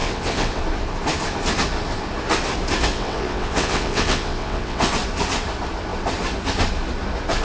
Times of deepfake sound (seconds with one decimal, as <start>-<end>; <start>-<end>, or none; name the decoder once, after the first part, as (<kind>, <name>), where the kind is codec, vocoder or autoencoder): 0.0-0.6 (vocoder, WaveNeXt); 2.9-4.9